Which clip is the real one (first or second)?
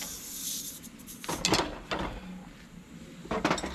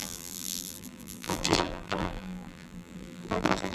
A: first